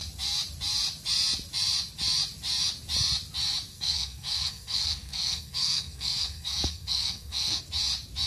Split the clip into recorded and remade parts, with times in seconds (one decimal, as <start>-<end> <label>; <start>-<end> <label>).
0.0-3.7 recorded; 3.7-7.6 remade; 7.6-8.3 recorded